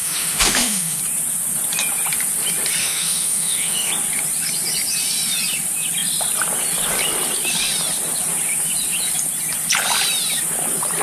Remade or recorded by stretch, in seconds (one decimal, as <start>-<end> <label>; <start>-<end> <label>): 0.0-1.0 remade; 1.0-2.8 recorded; 2.8-3.9 remade; 3.9-11.0 recorded

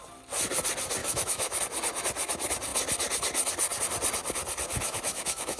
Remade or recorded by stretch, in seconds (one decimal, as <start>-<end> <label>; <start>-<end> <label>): 0.0-1.0 recorded; 1.0-1.6 remade; 1.6-4.7 recorded; 4.7-5.6 remade

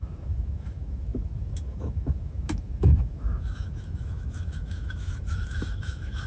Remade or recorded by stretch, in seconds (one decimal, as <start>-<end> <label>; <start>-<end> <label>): 0.0-6.3 remade

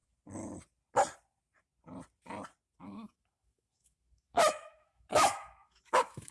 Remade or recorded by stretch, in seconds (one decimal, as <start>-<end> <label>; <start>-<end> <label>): 0.0-2.8 recorded; 2.8-6.3 remade

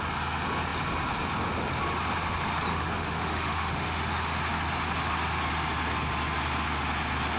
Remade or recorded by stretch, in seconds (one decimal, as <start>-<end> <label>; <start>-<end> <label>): 0.0-2.7 recorded; 2.7-4.4 remade; 4.4-7.4 recorded

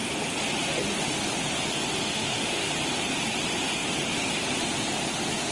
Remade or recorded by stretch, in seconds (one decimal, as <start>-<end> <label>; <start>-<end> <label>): 0.0-2.0 recorded; 2.0-2.7 remade; 2.7-5.5 recorded